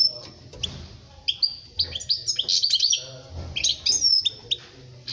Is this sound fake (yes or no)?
no